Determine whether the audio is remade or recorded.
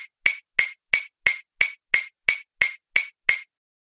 recorded